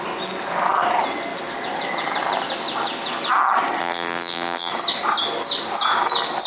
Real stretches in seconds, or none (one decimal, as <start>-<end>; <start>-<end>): 0.0-3.8; 4.7-6.5